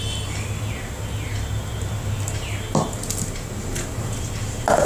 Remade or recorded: recorded